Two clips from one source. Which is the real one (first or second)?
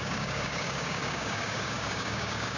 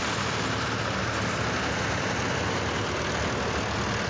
second